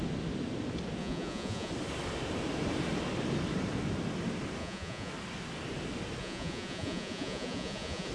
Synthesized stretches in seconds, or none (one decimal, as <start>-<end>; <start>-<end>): 1.0-1.7; 4.6-5.1; 6.2-8.1